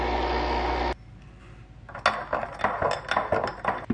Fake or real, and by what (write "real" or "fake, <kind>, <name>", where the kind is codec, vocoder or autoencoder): real